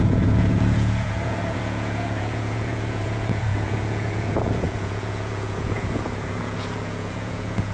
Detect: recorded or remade remade